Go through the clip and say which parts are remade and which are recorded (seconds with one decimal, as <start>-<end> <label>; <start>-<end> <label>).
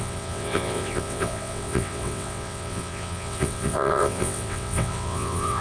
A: 0.0-5.6 remade